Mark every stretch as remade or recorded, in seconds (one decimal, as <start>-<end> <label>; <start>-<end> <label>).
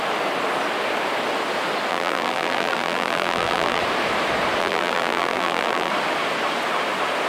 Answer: 0.0-1.9 recorded; 1.9-3.8 remade; 3.8-4.6 recorded; 4.6-5.9 remade; 5.9-7.3 recorded